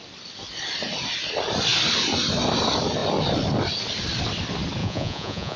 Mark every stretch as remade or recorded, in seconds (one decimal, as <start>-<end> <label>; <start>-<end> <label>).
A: 0.0-4.8 recorded; 4.8-5.6 remade